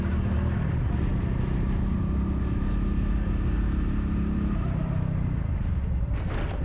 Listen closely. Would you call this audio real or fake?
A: real